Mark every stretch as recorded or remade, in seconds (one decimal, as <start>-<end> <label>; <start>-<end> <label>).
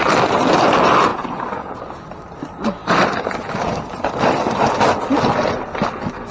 0.0-1.1 recorded; 1.1-1.8 remade; 1.8-6.3 recorded